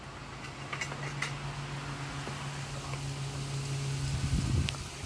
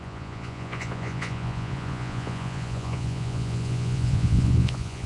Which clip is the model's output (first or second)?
second